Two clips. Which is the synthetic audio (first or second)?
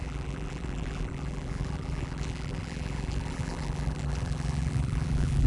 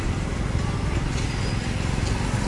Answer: first